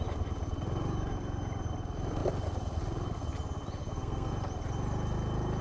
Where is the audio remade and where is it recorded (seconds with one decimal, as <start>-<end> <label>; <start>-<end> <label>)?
0.0-3.8 recorded; 3.8-4.3 remade; 4.3-5.6 recorded